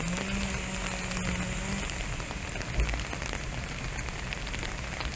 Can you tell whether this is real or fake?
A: real